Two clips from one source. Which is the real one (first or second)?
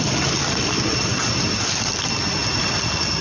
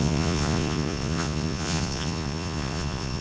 first